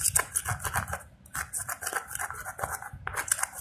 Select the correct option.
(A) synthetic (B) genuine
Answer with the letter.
B